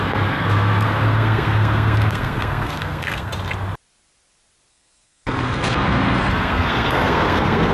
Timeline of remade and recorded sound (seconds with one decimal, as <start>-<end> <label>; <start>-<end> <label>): 0.0-3.3 remade; 3.3-4.7 recorded; 4.7-7.7 remade